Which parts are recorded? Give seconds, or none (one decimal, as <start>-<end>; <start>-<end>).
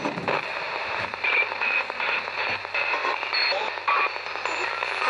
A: 0.0-0.5; 2.5-3.0; 3.6-5.1